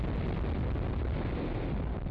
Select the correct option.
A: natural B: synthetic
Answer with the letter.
A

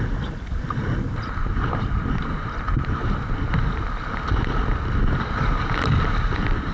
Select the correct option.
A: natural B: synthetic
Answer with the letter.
A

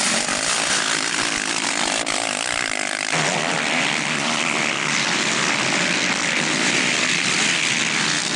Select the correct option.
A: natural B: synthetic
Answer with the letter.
B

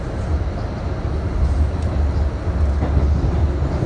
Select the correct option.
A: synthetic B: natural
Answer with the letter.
B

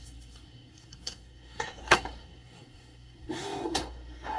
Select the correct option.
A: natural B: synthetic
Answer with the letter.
B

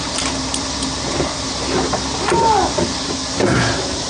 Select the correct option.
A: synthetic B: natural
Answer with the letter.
B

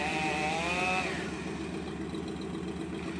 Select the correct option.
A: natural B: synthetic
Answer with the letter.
A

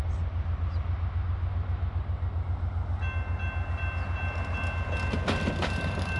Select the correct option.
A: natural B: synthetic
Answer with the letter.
A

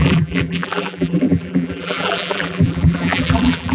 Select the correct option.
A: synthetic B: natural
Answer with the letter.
A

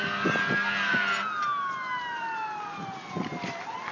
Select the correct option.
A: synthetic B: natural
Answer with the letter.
B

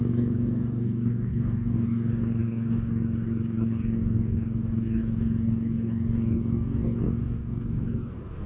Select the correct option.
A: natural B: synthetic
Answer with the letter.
B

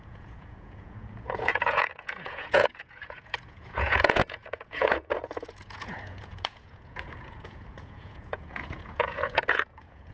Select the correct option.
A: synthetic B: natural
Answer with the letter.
A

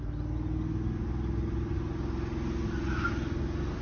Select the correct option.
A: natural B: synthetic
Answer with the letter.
A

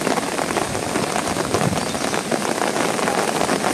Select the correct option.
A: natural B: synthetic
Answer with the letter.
A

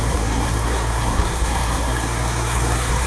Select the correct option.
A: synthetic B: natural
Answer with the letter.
A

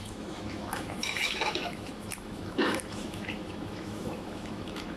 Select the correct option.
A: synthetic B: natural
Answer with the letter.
A